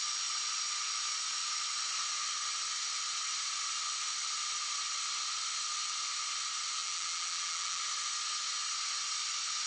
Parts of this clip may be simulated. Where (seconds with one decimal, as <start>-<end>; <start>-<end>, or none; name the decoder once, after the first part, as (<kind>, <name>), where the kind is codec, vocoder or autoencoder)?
6.8-7.8 (vocoder, BigVGAN v2)